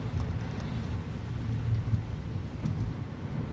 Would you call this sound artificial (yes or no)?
no